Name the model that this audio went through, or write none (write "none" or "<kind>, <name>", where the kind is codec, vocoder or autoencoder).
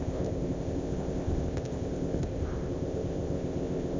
codec, ZipCodec